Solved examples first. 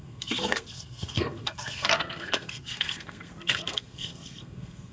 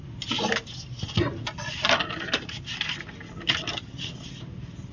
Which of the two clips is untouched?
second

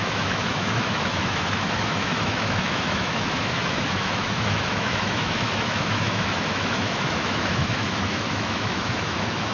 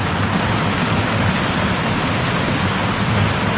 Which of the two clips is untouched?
second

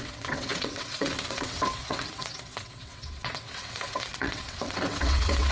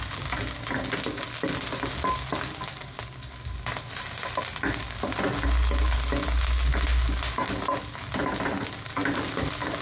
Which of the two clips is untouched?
second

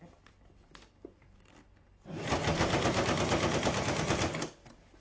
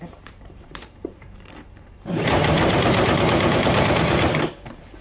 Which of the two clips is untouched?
first